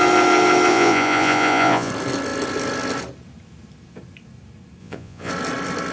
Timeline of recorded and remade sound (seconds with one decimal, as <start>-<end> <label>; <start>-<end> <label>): 0.0-0.7 recorded; 0.7-1.9 remade; 1.9-4.8 recorded; 4.8-5.3 remade; 5.3-5.9 recorded